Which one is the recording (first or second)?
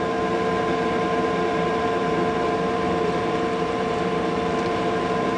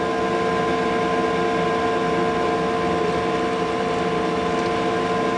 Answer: second